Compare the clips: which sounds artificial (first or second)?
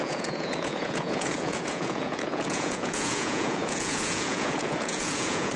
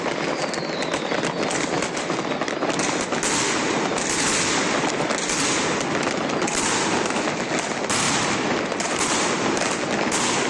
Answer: first